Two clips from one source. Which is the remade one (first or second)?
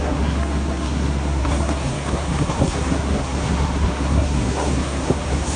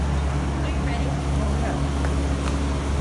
first